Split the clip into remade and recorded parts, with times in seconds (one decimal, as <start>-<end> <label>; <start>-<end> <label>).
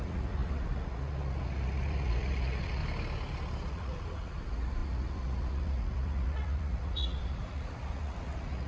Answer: 0.0-2.8 remade; 2.8-3.7 recorded; 3.7-8.7 remade